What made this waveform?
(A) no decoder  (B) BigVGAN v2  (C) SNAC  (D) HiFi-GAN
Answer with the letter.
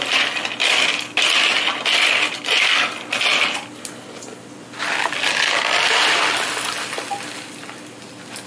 A